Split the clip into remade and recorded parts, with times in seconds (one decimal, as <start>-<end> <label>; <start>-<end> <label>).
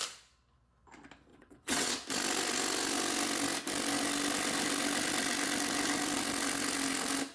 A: 0.0-1.3 recorded; 1.3-1.9 remade; 1.9-7.3 recorded